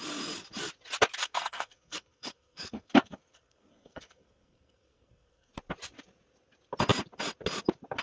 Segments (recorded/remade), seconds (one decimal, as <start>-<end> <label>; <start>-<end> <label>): 0.0-1.2 recorded; 1.2-5.5 remade; 5.5-8.0 recorded